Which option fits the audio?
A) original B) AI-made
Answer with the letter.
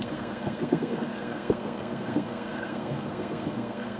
B